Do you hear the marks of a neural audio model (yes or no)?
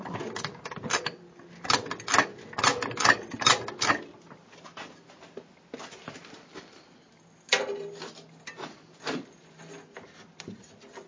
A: no